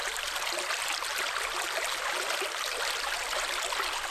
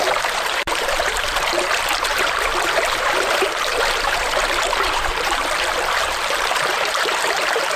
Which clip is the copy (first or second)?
second